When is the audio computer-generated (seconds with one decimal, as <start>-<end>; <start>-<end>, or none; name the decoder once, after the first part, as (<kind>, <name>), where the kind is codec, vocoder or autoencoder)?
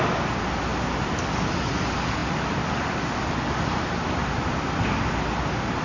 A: none